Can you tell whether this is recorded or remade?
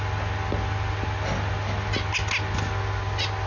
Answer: recorded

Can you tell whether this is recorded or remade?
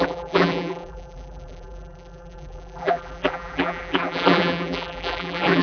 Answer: remade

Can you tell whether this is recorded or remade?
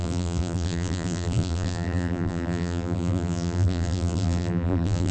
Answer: remade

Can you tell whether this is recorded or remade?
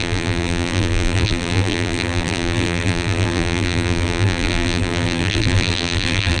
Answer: remade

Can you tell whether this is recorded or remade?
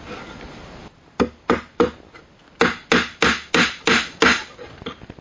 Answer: recorded